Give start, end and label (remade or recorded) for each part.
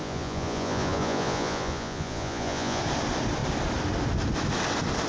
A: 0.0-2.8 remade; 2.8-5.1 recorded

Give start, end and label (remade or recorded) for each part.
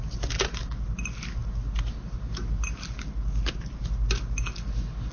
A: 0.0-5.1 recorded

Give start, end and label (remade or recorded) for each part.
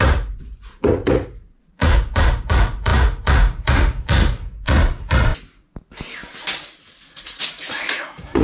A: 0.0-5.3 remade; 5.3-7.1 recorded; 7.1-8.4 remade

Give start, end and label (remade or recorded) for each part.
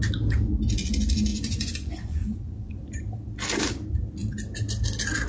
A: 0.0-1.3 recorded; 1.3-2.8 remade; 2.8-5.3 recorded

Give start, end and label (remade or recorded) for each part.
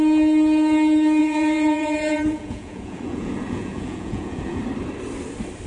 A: 0.0-1.2 recorded; 1.2-4.6 remade; 4.6-5.7 recorded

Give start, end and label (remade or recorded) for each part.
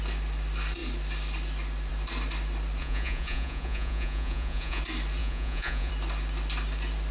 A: 0.0-2.8 recorded; 2.8-4.8 remade; 4.8-5.2 recorded; 5.2-5.9 remade; 5.9-7.1 recorded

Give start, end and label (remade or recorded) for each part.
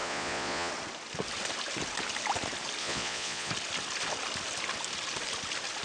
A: 0.0-0.7 remade; 0.7-2.8 recorded; 2.8-3.5 remade; 3.5-5.8 recorded